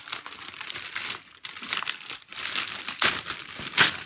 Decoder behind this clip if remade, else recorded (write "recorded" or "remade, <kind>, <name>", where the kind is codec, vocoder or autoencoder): recorded